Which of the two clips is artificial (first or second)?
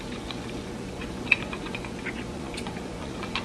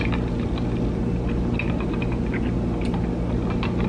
first